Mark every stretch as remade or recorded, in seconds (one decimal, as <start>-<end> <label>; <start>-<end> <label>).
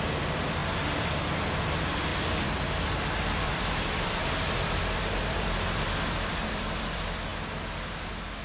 0.0-0.6 remade; 0.6-1.5 recorded; 1.5-7.3 remade; 7.3-8.4 recorded